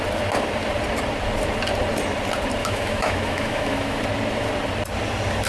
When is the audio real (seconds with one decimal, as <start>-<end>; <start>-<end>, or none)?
0.0-2.6; 4.0-5.5